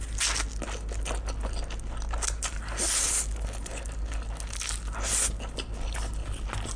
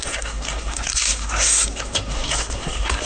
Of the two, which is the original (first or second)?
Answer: first